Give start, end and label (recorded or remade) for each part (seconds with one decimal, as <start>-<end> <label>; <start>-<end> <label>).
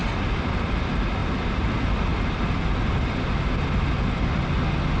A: 0.0-1.2 recorded; 1.2-1.7 remade; 1.7-5.0 recorded